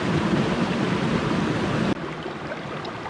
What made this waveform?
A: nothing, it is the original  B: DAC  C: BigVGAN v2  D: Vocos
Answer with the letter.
A